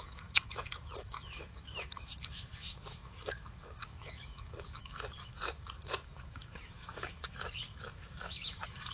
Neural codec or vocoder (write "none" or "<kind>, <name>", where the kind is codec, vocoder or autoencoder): autoencoder, DAC-VAE